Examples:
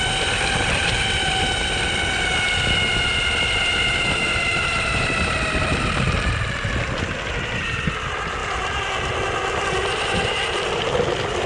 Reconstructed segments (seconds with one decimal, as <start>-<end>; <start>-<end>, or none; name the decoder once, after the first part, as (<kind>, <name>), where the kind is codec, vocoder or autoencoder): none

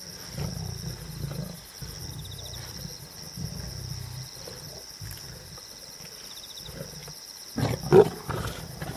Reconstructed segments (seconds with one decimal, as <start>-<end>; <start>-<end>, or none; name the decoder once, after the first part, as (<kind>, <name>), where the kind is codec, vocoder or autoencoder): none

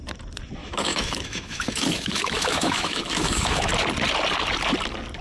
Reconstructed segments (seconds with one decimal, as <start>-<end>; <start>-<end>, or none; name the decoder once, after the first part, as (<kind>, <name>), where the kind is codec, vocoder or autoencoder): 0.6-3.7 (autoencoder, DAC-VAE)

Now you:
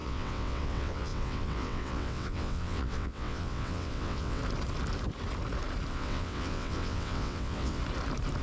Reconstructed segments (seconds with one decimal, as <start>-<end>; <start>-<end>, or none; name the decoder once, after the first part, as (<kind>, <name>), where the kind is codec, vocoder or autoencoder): 0.0-4.4 (vocoder, WaveNeXt); 5.9-7.8

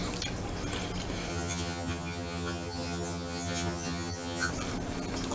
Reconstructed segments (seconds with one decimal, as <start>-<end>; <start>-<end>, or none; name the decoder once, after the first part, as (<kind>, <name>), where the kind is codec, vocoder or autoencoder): 1.3-4.5 (vocoder, HiFi-GAN)